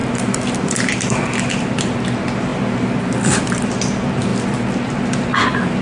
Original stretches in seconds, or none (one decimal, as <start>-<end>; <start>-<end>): 4.3-5.1